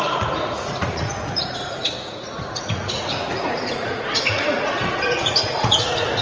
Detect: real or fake fake